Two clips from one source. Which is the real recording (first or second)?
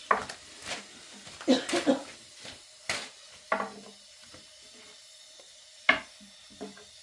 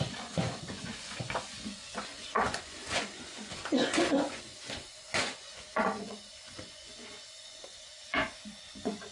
first